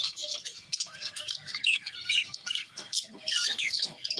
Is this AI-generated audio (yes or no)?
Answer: yes